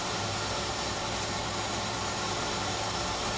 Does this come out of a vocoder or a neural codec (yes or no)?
yes